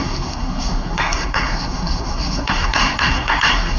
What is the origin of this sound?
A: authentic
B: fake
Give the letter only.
B